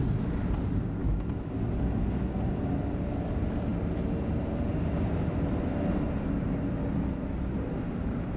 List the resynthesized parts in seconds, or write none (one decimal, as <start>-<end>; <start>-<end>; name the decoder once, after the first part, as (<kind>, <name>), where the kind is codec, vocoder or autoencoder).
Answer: 1.0-1.5 (autoencoder, DAC-VAE)